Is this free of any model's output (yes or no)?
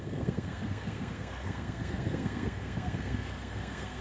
no